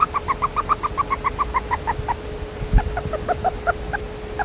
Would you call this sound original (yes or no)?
yes